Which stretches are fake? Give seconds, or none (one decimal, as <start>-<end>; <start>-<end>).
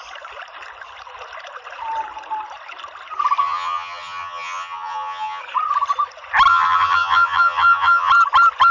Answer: 3.4-5.4; 6.5-8.1